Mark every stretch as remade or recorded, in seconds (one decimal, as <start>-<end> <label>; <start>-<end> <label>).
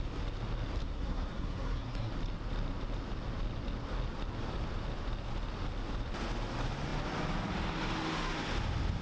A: 0.0-0.8 recorded; 0.8-2.1 remade; 2.1-9.0 recorded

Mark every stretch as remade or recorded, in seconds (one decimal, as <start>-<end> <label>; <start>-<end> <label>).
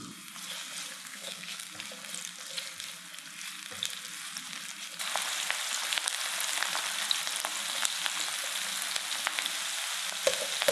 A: 0.0-1.0 recorded; 1.0-1.7 remade; 1.7-10.7 recorded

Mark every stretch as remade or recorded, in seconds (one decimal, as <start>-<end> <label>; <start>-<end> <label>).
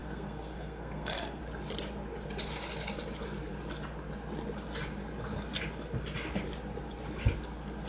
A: 0.0-1.4 remade; 1.4-7.9 recorded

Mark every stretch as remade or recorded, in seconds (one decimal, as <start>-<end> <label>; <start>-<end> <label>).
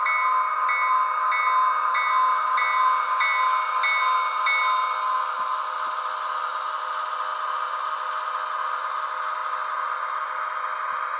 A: 0.0-11.2 recorded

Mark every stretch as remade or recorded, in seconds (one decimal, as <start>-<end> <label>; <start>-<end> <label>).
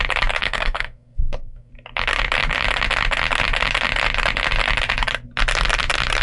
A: 0.0-0.4 recorded; 0.4-1.7 remade; 1.7-6.2 recorded